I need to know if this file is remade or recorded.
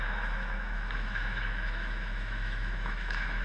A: remade